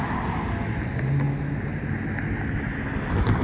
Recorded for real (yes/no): yes